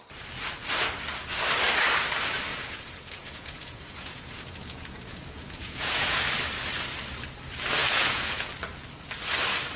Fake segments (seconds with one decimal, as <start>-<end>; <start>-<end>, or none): 2.5-6.2; 7.8-8.5